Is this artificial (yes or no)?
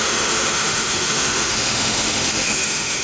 yes